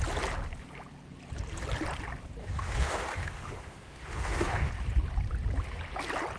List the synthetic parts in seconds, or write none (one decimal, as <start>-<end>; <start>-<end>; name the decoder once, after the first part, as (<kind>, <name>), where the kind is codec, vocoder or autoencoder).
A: 2.4-4.7 (autoencoder, DAC-VAE)